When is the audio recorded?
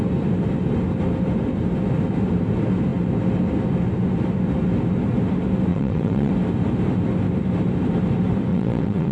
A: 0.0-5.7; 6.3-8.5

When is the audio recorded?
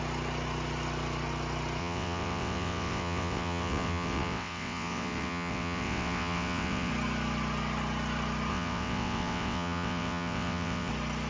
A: 0.0-1.8; 6.9-8.5; 10.9-11.3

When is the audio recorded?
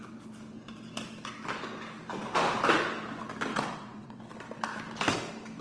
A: 0.0-3.5; 4.2-5.6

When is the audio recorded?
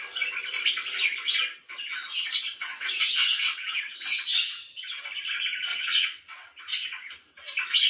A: 0.0-2.1; 5.0-5.7; 6.6-7.9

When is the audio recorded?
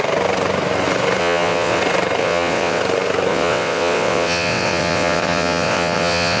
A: 0.0-1.2; 1.8-2.2; 2.8-3.3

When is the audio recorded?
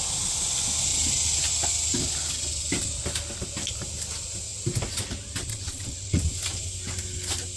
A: 0.0-5.5; 6.2-7.6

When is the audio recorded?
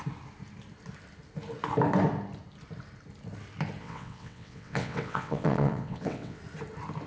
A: 0.0-3.8; 6.4-7.1